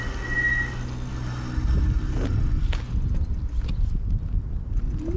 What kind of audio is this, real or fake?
real